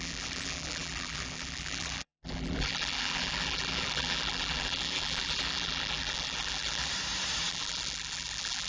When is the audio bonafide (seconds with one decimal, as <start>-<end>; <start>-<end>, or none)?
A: 6.9-7.5